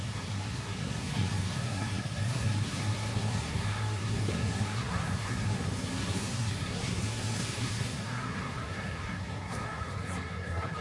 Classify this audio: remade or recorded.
remade